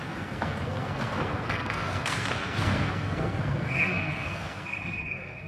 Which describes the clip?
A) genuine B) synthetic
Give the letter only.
B